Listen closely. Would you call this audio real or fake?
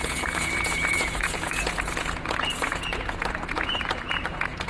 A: fake